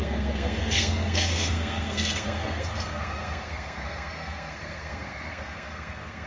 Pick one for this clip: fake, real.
fake